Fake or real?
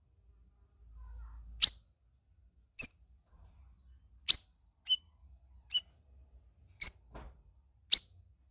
real